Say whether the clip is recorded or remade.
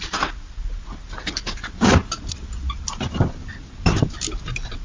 recorded